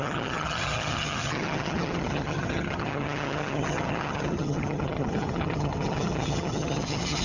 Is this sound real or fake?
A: fake